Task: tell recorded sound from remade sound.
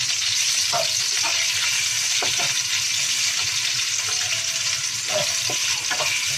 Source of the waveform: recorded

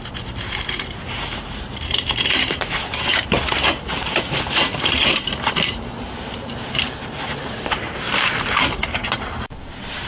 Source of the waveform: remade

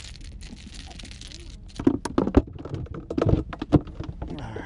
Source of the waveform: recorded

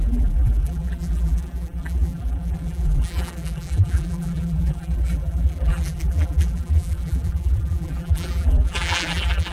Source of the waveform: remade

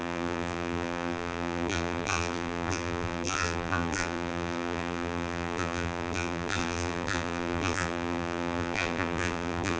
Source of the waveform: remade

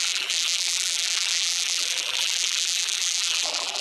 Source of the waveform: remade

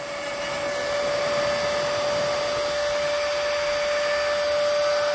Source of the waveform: recorded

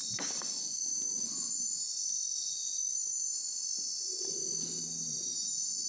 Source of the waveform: recorded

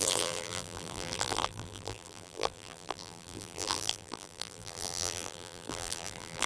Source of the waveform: remade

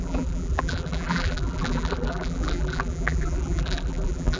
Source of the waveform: remade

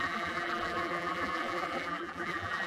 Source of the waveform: remade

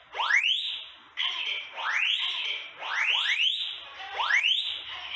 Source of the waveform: recorded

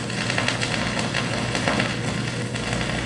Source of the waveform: recorded